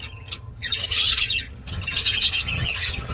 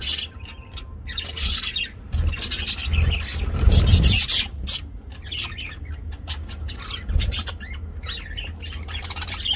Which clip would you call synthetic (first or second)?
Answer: first